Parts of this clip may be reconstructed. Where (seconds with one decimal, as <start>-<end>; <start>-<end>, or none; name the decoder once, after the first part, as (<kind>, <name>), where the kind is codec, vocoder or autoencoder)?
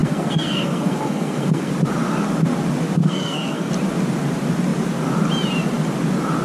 0.0-1.7 (codec, SNAC); 3.0-3.7